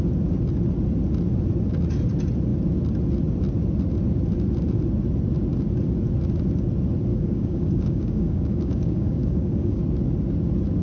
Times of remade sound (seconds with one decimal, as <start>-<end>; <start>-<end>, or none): 7.1-9.8